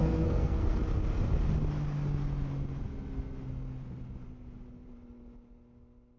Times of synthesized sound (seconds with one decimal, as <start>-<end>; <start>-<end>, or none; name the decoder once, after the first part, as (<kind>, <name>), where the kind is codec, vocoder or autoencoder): 0.0-0.8 (codec, SNAC)